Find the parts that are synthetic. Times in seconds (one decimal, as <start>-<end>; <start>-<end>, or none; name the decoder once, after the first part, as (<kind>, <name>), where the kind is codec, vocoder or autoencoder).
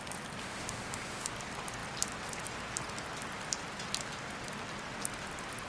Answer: 0.4-1.3 (autoencoder, DAC-VAE)